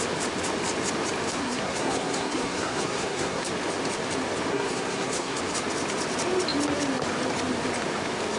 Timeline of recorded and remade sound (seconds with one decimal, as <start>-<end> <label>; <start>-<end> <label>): 0.0-1.3 recorded; 1.3-3.5 remade; 3.5-4.5 recorded; 4.5-5.4 remade; 5.4-8.4 recorded